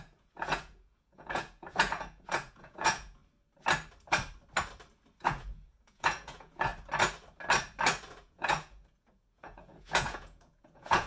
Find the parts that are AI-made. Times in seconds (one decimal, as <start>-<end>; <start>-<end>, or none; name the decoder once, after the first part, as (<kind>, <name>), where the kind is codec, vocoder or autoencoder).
0.0-3.2 (vocoder, Vocos); 5.2-6.7; 8.1-11.1